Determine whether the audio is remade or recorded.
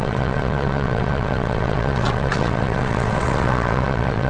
remade